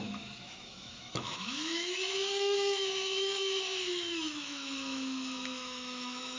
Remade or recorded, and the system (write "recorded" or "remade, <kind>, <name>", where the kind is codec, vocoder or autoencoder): remade, autoencoder, DAC-VAE